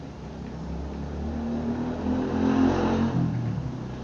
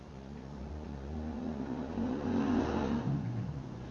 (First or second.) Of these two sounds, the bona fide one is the first